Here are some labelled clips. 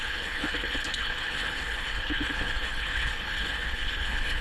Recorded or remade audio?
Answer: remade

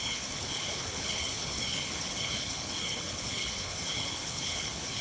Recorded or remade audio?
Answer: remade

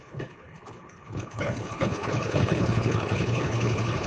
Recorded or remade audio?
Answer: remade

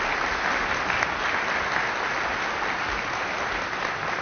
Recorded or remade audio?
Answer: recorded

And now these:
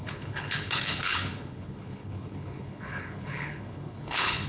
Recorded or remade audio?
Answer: remade